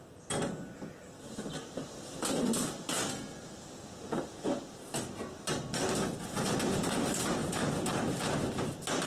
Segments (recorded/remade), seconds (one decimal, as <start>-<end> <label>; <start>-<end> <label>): 0.0-9.1 recorded